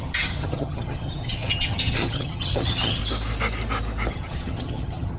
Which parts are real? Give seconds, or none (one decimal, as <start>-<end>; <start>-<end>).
3.0-4.1